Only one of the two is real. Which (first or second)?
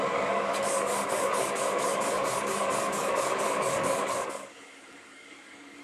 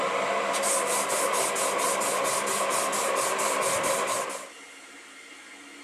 second